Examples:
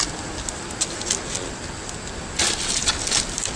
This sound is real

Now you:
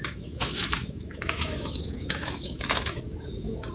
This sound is fake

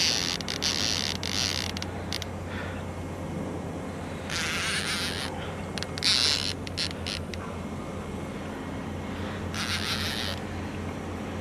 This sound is real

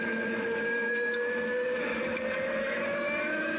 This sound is fake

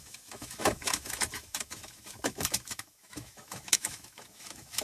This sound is fake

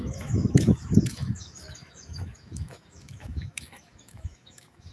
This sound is fake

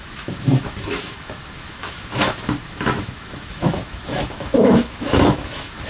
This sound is fake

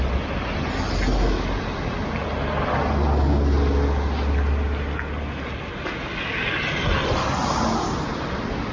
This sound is real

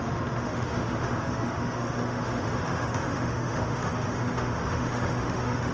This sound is fake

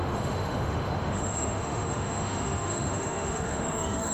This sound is fake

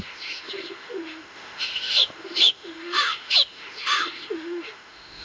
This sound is fake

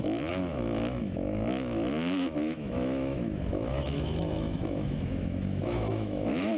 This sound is fake